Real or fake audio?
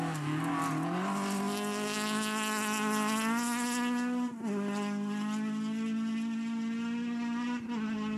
real